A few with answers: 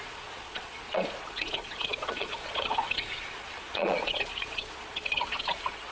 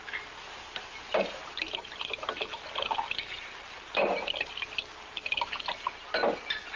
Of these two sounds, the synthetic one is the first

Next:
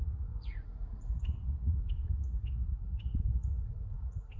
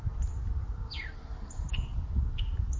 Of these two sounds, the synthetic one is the first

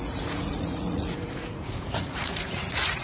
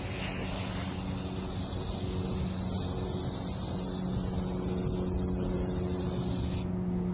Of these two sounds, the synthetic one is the first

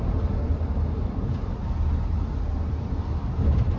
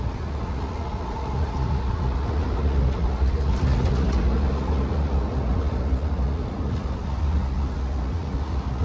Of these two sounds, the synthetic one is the second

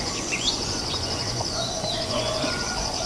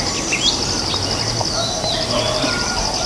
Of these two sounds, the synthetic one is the first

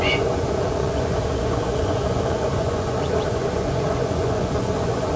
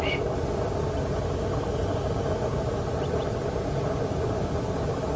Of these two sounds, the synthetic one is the first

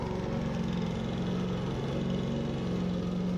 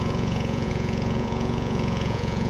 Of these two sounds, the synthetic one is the second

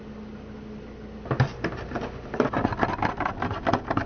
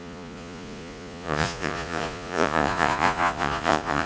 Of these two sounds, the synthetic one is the second